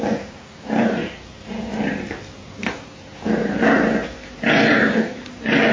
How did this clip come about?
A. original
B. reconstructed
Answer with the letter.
A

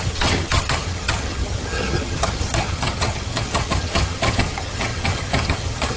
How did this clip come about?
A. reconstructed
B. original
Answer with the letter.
A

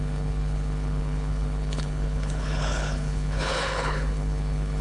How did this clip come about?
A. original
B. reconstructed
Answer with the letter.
B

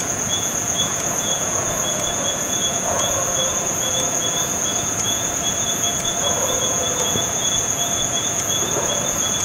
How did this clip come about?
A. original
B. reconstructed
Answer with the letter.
B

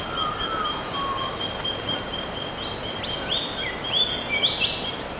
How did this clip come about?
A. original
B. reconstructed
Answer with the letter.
A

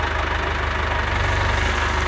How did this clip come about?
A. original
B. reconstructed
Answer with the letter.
A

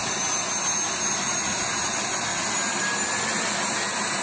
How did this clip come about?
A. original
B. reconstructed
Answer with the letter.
A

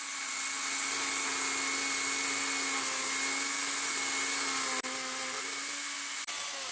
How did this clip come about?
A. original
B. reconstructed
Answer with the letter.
A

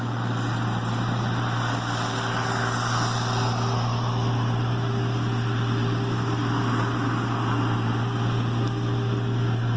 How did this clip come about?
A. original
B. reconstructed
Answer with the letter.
A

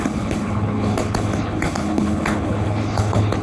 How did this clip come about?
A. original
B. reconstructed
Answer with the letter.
B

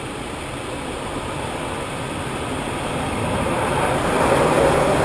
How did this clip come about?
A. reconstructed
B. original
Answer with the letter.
B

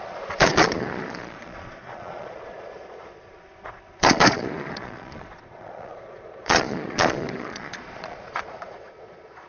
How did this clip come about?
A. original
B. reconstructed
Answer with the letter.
B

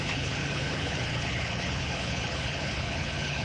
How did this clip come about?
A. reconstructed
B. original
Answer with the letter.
A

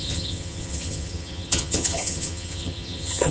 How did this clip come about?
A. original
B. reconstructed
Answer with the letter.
B